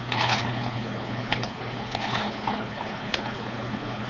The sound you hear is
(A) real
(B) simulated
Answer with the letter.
B